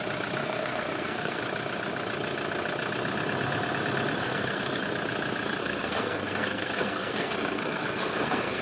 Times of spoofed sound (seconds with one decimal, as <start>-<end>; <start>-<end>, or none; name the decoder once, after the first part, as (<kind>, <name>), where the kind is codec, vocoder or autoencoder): 0.4-1.4 (codec, SNAC); 4.2-4.8; 5.6-8.6